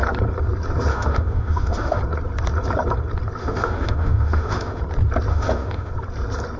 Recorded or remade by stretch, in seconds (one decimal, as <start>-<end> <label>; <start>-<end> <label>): 0.0-0.9 recorded; 0.9-2.0 remade; 2.0-3.4 recorded; 3.4-4.8 remade; 4.8-5.3 recorded; 5.3-5.9 remade; 5.9-6.6 recorded